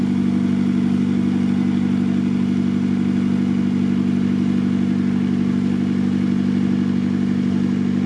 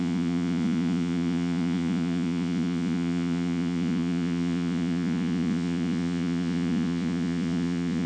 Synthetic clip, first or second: second